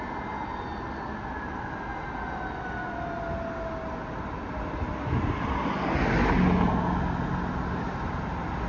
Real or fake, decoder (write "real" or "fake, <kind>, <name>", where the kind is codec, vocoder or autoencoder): real